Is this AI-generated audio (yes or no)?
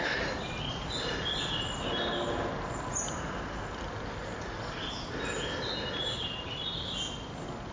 no